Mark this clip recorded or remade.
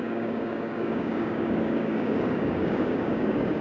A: remade